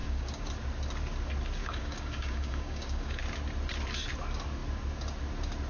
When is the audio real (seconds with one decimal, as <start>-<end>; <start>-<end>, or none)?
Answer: 0.5-1.6; 3.2-5.7